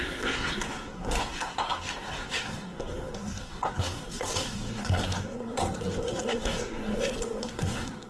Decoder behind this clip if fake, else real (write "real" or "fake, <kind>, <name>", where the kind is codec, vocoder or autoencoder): fake, codec, SNAC